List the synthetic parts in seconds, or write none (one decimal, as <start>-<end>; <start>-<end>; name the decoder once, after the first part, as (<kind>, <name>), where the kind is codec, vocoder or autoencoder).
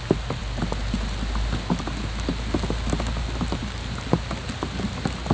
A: none